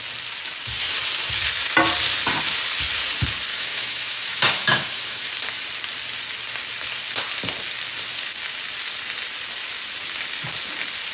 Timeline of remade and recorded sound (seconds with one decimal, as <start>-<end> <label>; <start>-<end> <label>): 0.0-3.5 recorded; 3.5-5.3 remade; 5.3-11.1 recorded